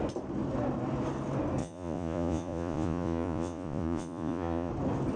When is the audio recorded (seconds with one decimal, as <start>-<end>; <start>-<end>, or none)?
0.0-1.6; 4.7-5.2